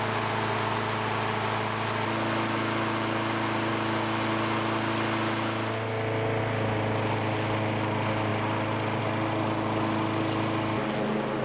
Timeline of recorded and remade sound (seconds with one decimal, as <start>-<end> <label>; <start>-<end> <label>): 0.0-11.4 recorded